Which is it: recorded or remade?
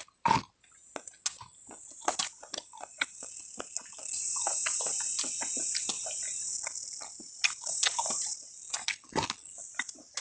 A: recorded